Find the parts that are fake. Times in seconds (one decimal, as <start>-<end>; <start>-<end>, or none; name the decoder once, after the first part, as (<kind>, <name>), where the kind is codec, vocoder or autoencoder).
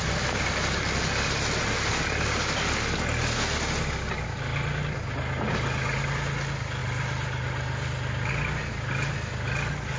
none